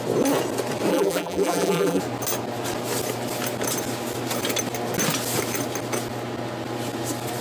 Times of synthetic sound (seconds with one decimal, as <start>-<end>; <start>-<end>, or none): 0.9-2.0